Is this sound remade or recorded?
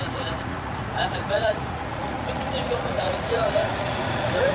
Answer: remade